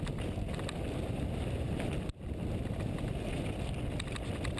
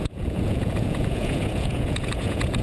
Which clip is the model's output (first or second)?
second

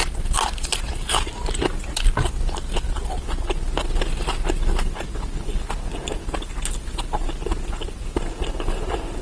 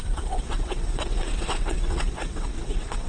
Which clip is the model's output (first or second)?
second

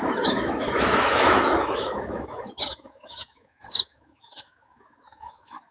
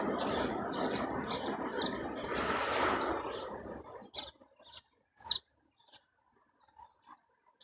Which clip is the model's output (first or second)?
first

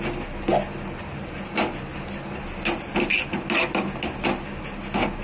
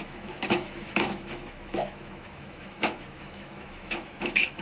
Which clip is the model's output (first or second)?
second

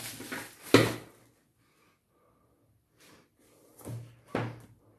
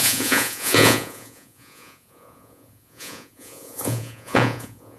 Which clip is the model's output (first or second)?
second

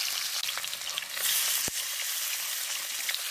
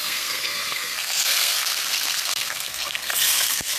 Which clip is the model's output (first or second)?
second